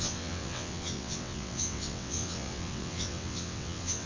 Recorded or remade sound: remade